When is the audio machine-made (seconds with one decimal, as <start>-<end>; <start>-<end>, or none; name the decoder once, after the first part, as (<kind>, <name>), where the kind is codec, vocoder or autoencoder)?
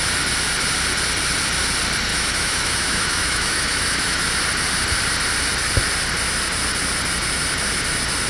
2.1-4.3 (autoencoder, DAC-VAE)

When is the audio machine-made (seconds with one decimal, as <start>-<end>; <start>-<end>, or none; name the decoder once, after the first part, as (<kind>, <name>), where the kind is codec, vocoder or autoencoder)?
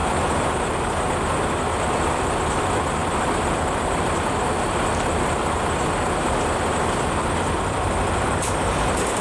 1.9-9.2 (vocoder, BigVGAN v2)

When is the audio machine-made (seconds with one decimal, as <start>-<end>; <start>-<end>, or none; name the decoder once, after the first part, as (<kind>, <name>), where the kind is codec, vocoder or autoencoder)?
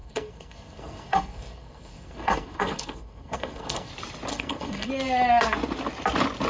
0.0-3.9 (codec, SNAC); 4.3-4.9